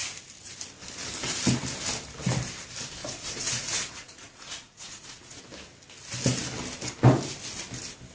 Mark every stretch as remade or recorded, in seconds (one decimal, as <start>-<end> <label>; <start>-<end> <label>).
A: 0.0-3.0 recorded; 3.0-5.4 remade; 5.4-8.1 recorded